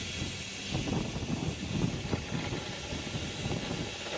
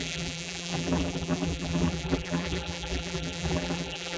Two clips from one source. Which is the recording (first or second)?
first